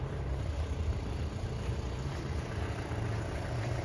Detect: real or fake fake